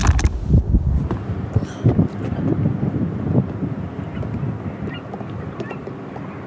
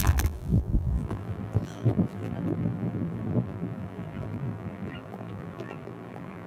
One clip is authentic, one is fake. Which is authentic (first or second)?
first